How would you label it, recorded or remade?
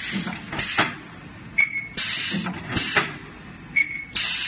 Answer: recorded